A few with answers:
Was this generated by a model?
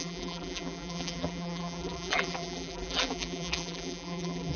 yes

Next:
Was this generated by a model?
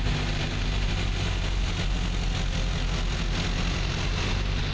no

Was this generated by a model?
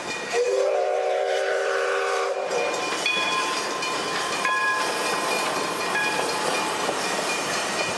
yes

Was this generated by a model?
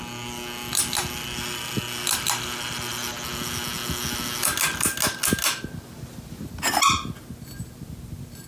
no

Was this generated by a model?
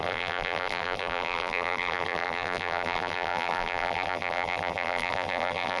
yes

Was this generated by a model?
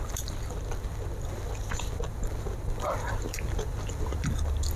no